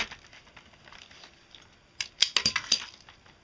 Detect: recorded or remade recorded